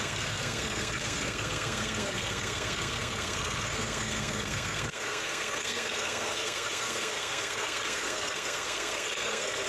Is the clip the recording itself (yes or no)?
no